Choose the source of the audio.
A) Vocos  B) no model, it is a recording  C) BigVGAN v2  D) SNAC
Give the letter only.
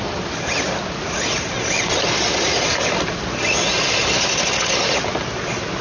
B